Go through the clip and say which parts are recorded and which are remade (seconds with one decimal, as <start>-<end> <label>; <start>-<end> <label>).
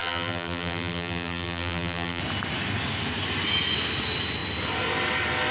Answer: 0.0-2.2 remade; 2.2-5.5 recorded